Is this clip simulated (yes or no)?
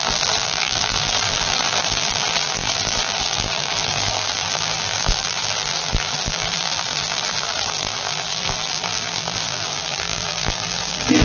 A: yes